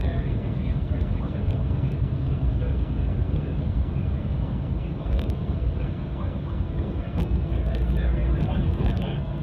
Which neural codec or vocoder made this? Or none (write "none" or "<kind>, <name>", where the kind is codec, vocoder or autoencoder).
codec, SNAC